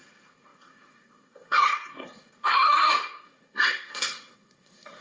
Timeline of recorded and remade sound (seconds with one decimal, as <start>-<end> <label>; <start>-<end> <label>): 0.0-5.0 remade